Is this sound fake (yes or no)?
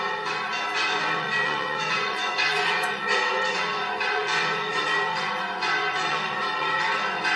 yes